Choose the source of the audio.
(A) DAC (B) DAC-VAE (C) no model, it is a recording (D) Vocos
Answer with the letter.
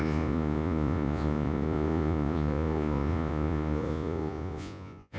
D